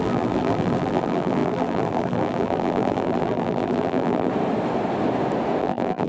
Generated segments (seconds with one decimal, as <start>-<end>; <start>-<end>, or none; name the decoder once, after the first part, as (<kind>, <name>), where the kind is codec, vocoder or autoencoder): 0.0-4.3 (vocoder, BigVGAN v2); 5.6-6.1